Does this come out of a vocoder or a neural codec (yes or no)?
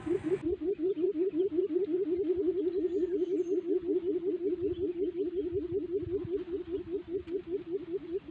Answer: no